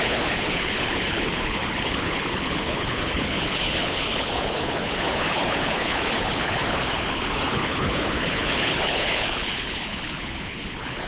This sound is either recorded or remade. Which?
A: remade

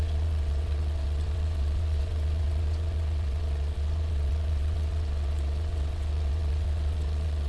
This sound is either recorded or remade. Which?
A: remade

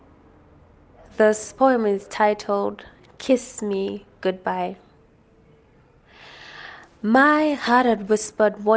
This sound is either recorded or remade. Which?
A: recorded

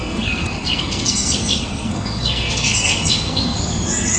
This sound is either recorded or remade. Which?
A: remade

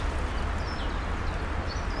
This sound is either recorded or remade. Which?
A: recorded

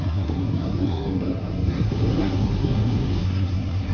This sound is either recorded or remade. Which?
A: remade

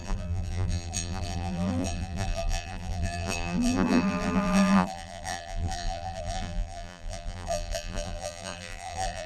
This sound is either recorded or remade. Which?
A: remade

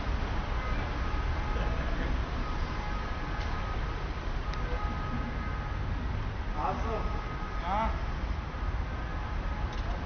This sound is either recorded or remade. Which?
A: recorded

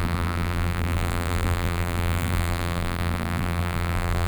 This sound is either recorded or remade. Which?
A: remade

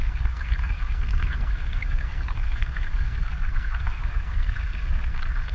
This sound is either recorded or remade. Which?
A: remade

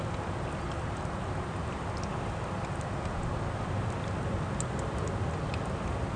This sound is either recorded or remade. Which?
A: recorded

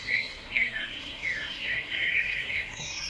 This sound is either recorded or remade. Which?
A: remade